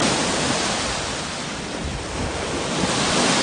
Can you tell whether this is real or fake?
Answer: real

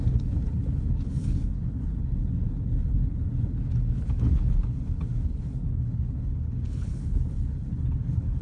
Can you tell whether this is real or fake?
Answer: fake